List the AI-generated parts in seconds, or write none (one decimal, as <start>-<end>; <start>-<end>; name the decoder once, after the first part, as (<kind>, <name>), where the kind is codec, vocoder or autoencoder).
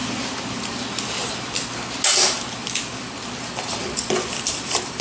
2.9-5.0 (vocoder, BigVGAN v2)